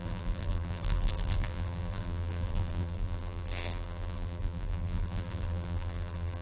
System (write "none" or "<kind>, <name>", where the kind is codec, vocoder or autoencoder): vocoder, BigVGAN v2